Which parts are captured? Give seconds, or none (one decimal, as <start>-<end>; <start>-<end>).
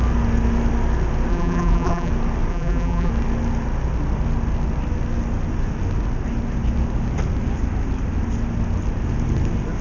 0.0-1.3; 2.1-2.5; 3.1-9.8